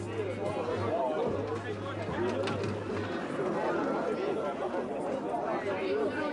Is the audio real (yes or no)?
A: yes